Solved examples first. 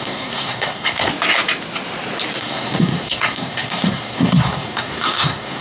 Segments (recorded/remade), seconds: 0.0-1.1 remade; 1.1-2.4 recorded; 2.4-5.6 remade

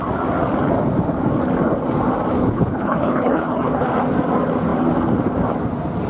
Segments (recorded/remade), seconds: 0.0-2.4 recorded; 2.4-3.9 remade; 3.9-6.1 recorded

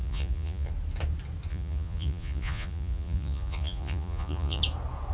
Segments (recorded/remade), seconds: 0.0-0.7 remade; 0.7-1.5 recorded; 1.5-4.6 remade; 4.6-5.1 recorded